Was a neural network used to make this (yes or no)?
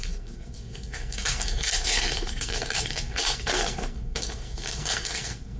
yes